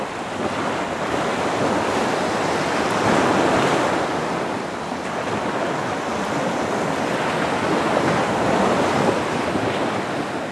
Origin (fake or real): real